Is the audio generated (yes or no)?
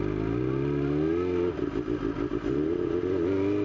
no